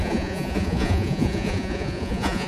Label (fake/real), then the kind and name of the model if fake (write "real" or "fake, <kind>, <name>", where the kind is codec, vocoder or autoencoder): fake, vocoder, Vocos